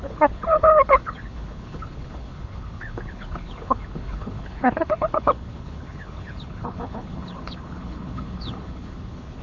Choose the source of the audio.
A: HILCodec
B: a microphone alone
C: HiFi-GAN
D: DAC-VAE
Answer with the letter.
A